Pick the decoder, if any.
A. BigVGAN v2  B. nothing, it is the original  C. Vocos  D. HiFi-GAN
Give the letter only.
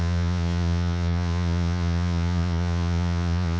C